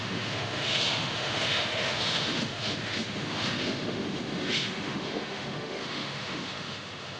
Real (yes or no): no